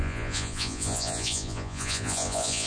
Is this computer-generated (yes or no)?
yes